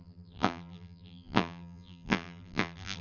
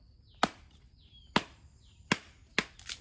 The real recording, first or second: second